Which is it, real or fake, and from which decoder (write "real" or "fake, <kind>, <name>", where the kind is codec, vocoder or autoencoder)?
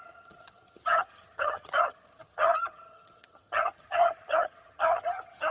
fake, vocoder, HiFi-GAN